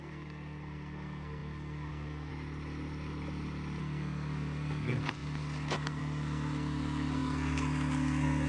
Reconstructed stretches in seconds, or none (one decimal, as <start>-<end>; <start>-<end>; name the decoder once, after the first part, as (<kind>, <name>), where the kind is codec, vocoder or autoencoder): 0.0-2.3 (codec, SNAC); 3.8-8.5